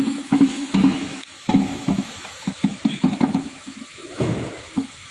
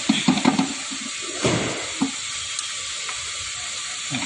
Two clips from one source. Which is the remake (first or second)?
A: first